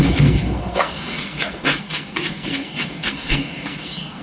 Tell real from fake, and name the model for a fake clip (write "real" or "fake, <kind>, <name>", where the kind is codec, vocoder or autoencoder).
fake, codec, SNAC